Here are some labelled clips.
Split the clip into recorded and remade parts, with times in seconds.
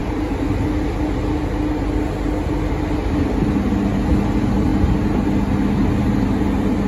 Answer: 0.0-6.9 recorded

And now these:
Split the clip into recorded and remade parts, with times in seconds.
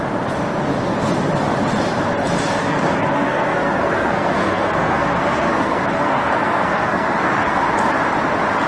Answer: 0.0-2.6 recorded; 2.6-7.6 remade; 7.6-8.7 recorded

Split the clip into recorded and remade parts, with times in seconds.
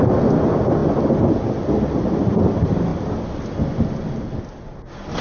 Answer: 0.0-5.2 recorded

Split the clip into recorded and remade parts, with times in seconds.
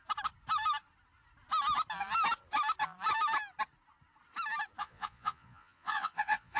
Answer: 0.0-4.8 recorded; 4.8-6.6 remade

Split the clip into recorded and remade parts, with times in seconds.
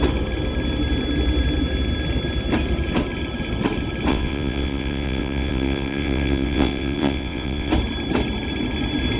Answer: 0.0-4.1 recorded; 4.1-7.7 remade; 7.7-9.2 recorded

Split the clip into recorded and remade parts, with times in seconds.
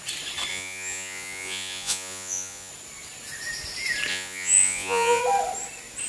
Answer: 0.0-0.5 recorded; 0.5-2.7 remade; 2.7-4.1 recorded; 4.1-5.2 remade; 5.2-6.1 recorded